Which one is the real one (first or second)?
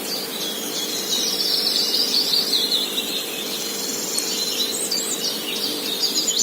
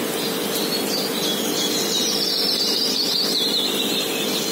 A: second